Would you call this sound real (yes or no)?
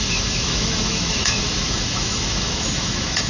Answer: no